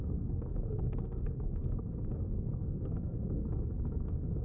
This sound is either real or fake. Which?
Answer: fake